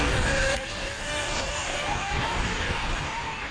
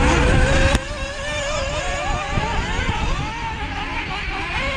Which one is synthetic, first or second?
first